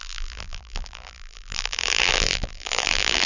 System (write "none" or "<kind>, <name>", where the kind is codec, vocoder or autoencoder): vocoder, BigVGAN v2